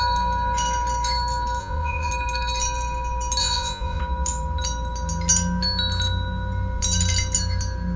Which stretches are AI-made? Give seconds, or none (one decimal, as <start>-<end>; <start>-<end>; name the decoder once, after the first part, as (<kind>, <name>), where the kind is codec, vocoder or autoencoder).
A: 1.6-2.1 (vocoder, Vocos); 3.4-4.0